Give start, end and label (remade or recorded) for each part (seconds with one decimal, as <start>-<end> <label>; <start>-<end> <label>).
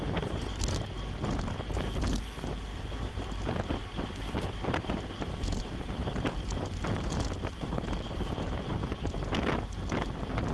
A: 0.0-2.7 recorded; 2.7-3.3 remade; 3.3-3.8 recorded; 3.8-5.6 remade; 5.6-6.0 recorded; 6.0-9.3 remade; 9.3-10.5 recorded